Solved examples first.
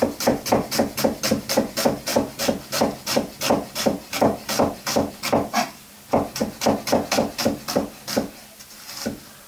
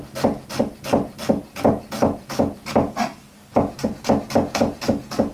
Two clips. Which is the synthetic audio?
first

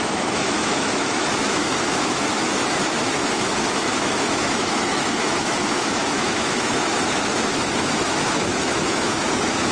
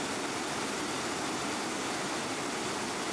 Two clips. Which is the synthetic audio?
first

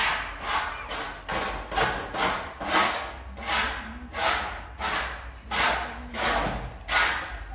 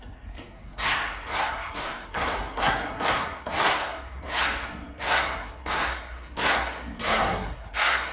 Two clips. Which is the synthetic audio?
second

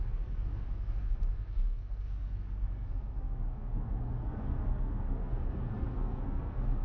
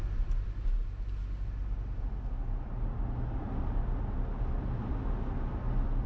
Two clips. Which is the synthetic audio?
first